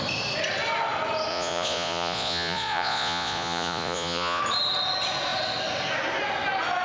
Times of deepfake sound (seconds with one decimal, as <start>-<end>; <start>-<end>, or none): 1.3-4.4